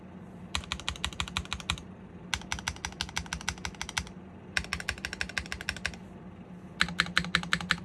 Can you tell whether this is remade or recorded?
recorded